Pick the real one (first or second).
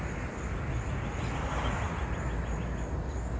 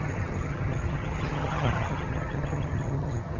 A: first